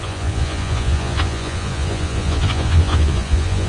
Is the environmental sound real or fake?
fake